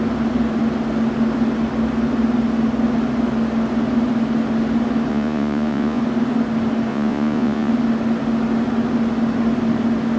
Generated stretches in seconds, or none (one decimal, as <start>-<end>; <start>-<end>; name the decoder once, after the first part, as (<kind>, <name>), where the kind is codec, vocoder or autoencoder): 5.1-6.0 (vocoder, Vocos); 6.9-7.7